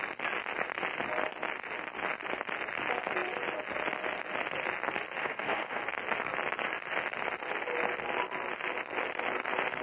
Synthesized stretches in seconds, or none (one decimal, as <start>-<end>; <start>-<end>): 5.2-5.8